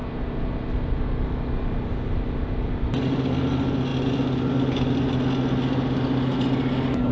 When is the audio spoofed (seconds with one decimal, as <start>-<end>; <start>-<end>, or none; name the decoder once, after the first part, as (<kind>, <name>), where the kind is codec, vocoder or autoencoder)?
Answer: none